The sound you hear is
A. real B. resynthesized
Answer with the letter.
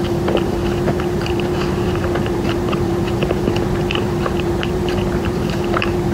B